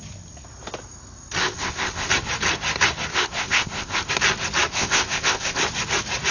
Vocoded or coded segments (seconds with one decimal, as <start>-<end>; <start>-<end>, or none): 1.4-2.1; 3.1-4.1; 4.7-5.6